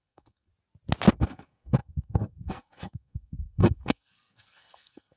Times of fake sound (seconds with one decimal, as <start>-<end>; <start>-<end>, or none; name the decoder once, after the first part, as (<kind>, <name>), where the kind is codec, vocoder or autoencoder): 0.0-0.5 (codec, SNAC); 1.2-5.2